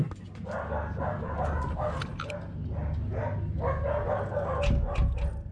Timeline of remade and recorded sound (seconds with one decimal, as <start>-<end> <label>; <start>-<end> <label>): 0.0-5.5 recorded